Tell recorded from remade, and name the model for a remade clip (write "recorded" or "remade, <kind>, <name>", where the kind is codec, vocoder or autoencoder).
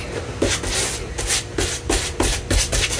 recorded